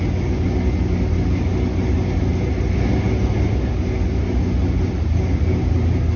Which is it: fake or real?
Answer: real